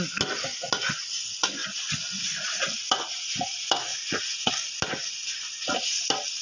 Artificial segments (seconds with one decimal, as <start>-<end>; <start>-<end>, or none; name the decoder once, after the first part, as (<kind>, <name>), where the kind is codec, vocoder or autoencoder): 3.9-4.5 (vocoder, Vocos)